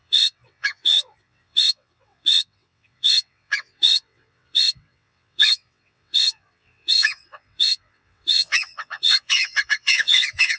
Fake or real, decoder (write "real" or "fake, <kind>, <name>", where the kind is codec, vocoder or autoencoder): fake, vocoder, WaveNeXt